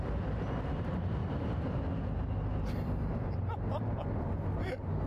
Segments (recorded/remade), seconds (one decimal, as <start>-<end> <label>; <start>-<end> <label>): 0.0-5.1 recorded